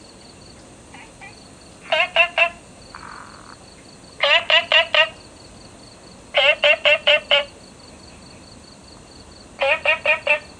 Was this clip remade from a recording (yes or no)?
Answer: no